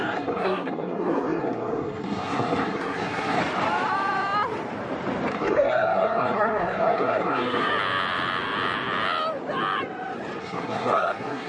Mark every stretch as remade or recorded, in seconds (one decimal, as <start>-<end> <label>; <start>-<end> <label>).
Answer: 0.0-3.4 remade; 3.4-5.3 recorded; 5.3-7.7 remade; 7.7-10.4 recorded; 10.4-11.5 remade